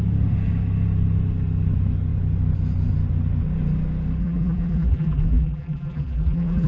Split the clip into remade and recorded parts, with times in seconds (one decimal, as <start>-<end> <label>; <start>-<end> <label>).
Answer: 0.0-4.2 recorded; 4.2-6.7 remade